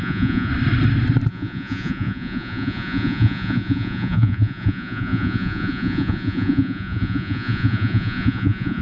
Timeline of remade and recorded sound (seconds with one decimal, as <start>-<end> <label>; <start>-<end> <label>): 0.0-0.5 remade; 0.5-1.3 recorded; 1.3-8.8 remade